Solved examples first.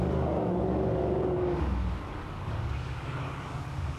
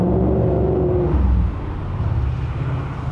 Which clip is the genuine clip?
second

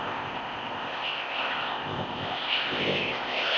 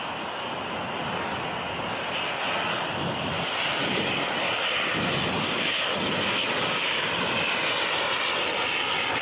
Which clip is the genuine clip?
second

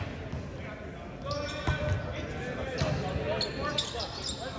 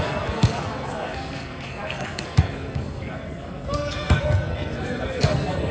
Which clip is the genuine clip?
first